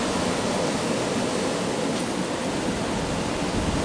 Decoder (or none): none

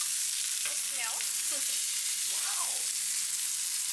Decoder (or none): none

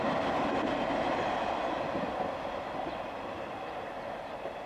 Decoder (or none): none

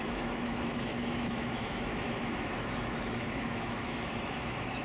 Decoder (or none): autoencoder, DAC-VAE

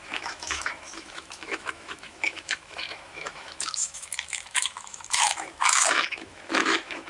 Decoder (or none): autoencoder, DAC-VAE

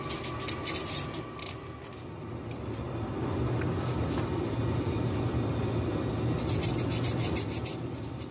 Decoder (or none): none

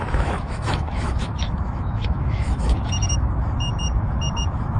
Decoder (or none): autoencoder, DAC-VAE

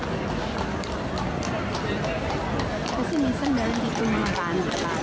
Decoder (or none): none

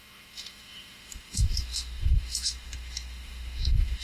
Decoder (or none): autoencoder, DAC-VAE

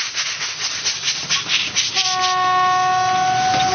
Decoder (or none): none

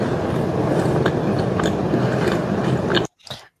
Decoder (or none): none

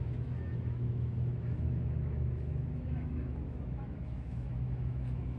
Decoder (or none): autoencoder, DAC-VAE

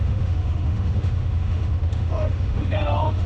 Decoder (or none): autoencoder, DAC-VAE